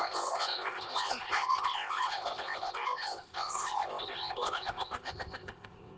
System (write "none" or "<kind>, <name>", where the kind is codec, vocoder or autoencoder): codec, ZipCodec